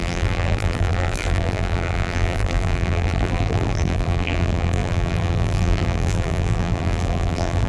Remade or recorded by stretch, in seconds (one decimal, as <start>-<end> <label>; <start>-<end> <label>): 0.0-7.7 remade